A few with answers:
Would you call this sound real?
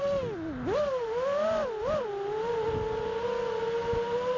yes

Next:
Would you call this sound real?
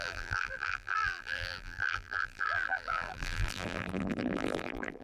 no